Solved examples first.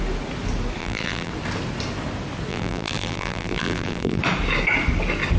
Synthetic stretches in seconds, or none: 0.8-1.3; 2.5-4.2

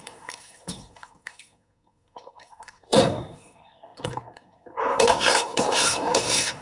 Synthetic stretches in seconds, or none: 0.0-6.6

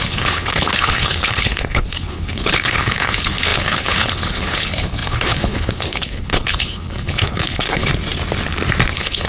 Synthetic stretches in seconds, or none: 0.0-7.9; 8.9-9.3

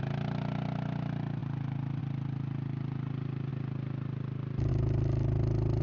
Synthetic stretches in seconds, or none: none

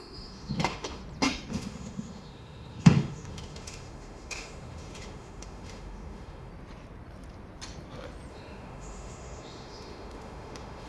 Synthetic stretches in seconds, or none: 0.0-1.0; 1.5-6.5; 8.3-10.9

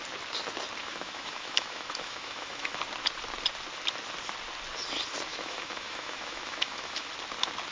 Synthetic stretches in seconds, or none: 0.8-2.8; 5.3-7.1